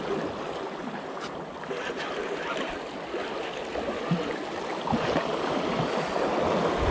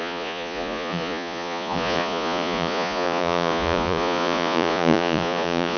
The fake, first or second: second